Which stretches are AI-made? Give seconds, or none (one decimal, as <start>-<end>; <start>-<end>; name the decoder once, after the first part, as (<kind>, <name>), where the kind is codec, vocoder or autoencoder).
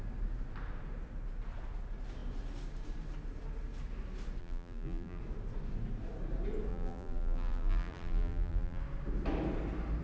4.4-5.2 (vocoder, BigVGAN v2); 6.7-8.8